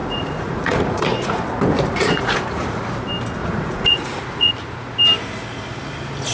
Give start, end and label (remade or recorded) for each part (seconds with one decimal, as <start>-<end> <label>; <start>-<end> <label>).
0.0-1.4 remade; 1.4-2.0 recorded; 2.0-2.8 remade; 2.8-3.4 recorded; 3.4-4.5 remade; 4.5-6.3 recorded